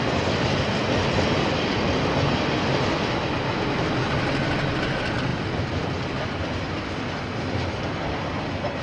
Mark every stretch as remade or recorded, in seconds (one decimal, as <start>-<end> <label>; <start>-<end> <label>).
0.0-8.8 recorded